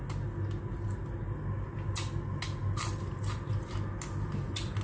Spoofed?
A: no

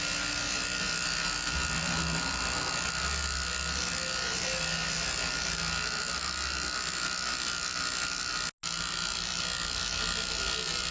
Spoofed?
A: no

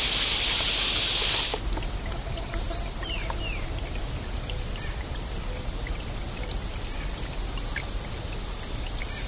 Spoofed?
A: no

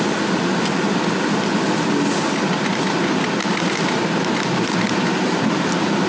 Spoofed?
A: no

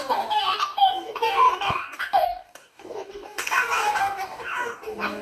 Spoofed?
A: yes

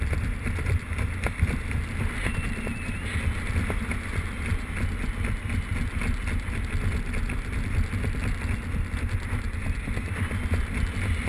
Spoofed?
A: no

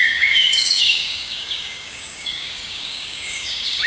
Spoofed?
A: yes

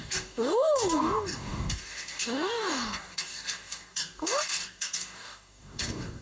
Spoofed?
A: yes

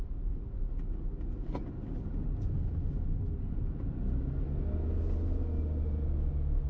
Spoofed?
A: no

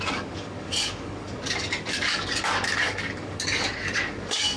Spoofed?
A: yes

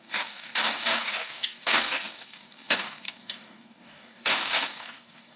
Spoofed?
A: yes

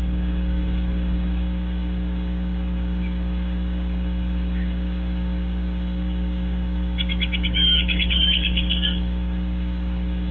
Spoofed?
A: yes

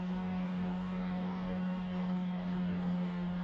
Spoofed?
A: yes